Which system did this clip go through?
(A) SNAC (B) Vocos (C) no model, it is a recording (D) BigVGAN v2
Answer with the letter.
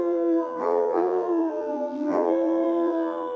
D